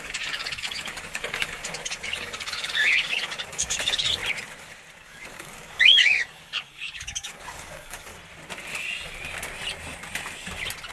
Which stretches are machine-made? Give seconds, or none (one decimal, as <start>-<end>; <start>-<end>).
0.0-4.2; 5.0-8.1